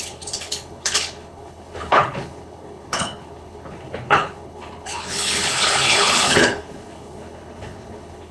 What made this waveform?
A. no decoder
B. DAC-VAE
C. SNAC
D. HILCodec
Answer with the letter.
D